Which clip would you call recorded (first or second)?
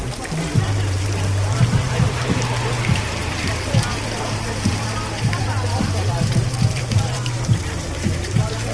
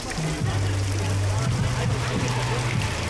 second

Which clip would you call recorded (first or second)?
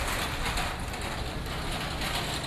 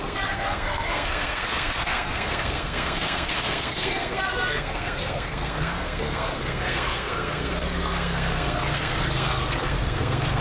first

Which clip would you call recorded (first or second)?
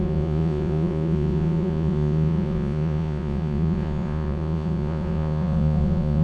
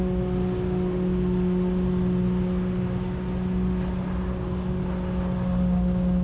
second